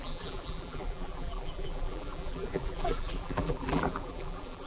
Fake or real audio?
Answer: fake